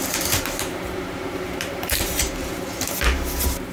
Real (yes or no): no